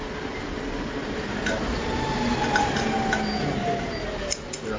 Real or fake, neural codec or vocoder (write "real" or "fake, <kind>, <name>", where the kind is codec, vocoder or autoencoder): real